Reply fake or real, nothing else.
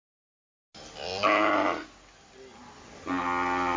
real